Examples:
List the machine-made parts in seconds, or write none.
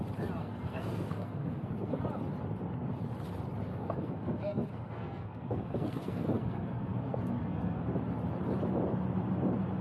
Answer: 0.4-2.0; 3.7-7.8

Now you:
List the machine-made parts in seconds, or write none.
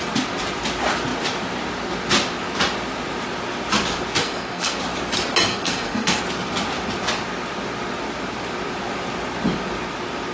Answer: 4.2-4.8; 5.5-6.2